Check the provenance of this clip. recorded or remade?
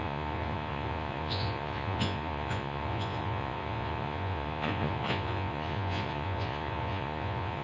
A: remade